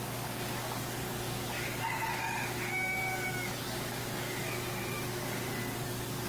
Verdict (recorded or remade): remade